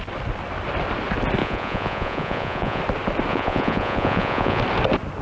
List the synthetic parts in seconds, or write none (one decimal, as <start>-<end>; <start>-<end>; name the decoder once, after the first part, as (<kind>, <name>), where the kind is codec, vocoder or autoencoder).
1.4-2.8 (vocoder, Vocos); 3.3-4.6